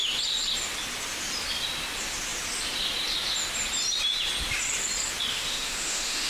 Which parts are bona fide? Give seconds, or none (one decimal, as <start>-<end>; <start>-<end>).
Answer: 0.0-5.3